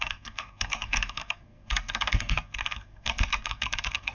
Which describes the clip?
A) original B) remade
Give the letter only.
B